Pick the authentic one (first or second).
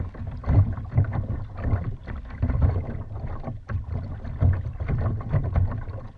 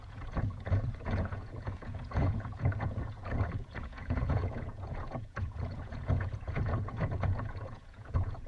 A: first